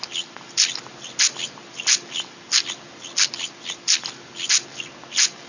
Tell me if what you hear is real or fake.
real